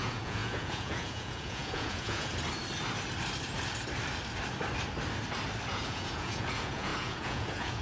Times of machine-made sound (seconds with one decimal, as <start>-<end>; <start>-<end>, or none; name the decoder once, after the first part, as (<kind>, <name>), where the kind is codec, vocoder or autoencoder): 0.0-2.3 (vocoder, Vocos); 5.7-7.8